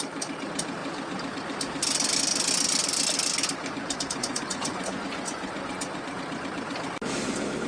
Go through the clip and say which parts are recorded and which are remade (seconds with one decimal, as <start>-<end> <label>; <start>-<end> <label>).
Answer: 0.0-4.2 recorded; 4.2-6.2 remade; 6.2-7.7 recorded